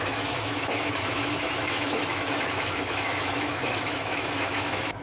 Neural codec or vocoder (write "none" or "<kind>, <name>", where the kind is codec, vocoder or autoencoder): autoencoder, DAC-VAE